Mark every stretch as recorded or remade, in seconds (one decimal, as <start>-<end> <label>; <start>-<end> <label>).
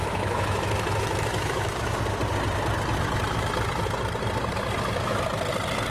0.0-2.0 remade; 2.0-5.9 recorded